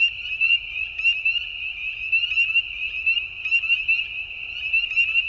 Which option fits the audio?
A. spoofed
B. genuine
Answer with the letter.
B